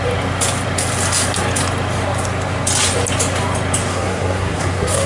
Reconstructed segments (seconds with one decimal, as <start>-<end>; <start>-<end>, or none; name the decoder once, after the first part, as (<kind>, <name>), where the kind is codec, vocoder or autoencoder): 3.9-5.1 (codec, SNAC)